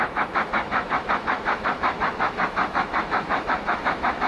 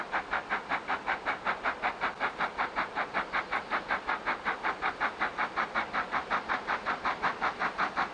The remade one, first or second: first